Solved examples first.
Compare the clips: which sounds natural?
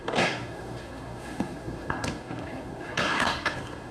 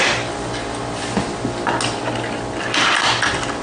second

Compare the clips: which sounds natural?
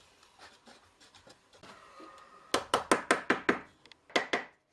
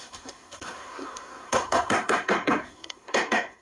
first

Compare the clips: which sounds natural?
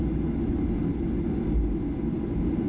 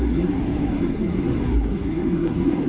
first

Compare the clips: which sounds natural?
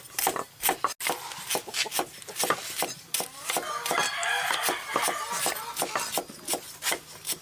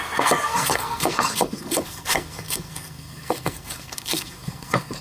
first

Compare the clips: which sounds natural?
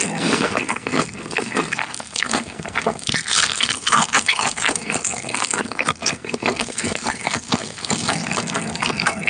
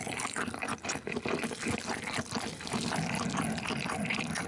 second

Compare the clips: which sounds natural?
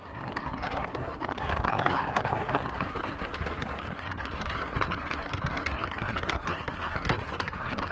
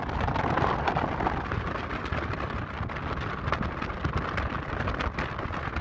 second